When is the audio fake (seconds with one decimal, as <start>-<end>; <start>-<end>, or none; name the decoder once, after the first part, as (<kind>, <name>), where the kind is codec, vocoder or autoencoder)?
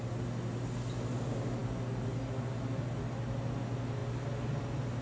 none